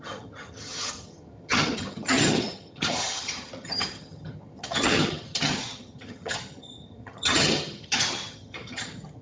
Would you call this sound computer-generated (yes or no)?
yes